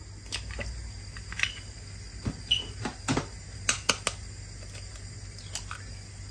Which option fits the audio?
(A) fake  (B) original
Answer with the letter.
B